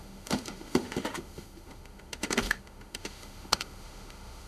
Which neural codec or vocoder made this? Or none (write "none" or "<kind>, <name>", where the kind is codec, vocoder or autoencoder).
autoencoder, DAC-VAE